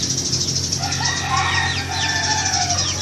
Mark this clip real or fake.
real